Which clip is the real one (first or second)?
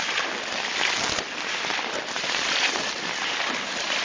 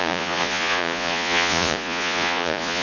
first